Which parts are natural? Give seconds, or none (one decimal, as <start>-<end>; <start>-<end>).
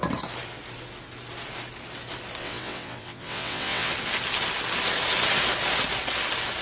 0.0-2.4; 3.9-6.6